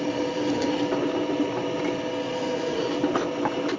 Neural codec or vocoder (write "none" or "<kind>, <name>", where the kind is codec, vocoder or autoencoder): none